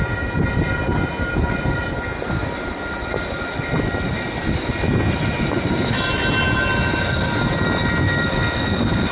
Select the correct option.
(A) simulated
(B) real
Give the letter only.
B